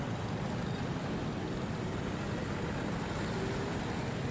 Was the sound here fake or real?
real